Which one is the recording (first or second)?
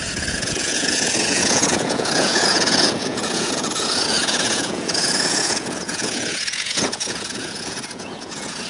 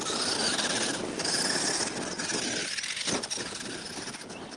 second